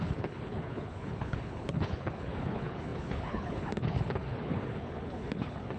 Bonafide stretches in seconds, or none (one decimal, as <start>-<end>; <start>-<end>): none